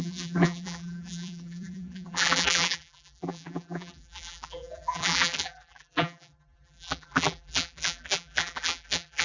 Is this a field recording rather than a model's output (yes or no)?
no